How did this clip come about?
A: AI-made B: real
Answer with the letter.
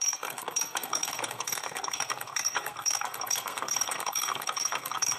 A